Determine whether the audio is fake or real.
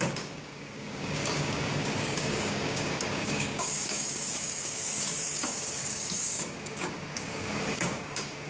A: fake